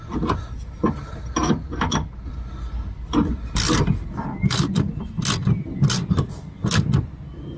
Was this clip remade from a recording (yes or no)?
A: no